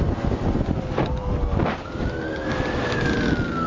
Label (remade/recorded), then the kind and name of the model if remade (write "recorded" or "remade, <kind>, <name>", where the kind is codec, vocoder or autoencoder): recorded